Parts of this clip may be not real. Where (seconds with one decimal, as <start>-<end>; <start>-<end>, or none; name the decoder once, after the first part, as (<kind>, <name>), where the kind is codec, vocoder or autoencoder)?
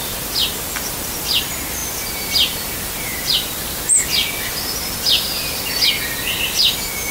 none